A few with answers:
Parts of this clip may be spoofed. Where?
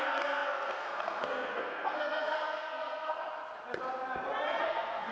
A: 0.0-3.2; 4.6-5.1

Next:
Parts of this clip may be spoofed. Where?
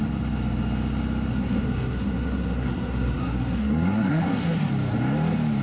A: 1.3-4.7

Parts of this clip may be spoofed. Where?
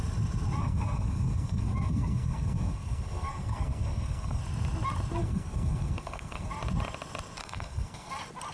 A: 0.6-4.4; 5.2-6.5; 7.4-8.1